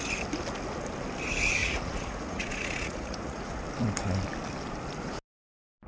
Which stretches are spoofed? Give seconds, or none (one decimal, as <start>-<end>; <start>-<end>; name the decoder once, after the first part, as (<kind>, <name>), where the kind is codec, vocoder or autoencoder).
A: 1.6-3.6 (vocoder, Vocos)